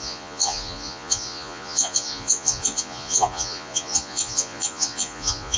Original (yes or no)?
no